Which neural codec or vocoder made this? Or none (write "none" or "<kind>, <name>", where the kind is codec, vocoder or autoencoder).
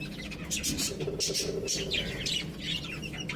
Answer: none